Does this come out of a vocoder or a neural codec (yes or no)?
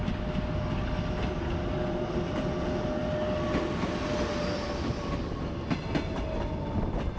no